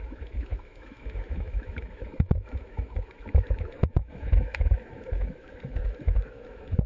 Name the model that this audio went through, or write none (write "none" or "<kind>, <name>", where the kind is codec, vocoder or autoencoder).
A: autoencoder, DAC-VAE